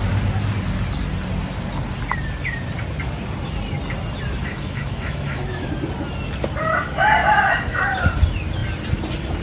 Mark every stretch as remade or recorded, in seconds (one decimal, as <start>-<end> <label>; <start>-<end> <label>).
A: 0.0-4.5 recorded; 4.5-5.7 remade; 5.7-7.2 recorded; 7.2-7.8 remade; 7.8-9.4 recorded